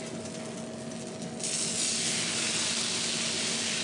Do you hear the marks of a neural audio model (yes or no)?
no